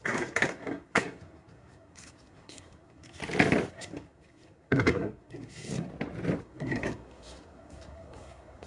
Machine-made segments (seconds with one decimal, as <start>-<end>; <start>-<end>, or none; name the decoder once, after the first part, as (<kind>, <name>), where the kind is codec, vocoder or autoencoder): 0.0-3.2 (codec, SNAC); 3.7-5.9; 6.4-8.7